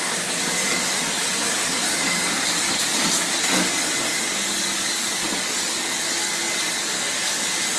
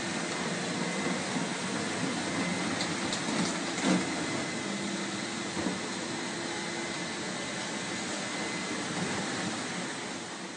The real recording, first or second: second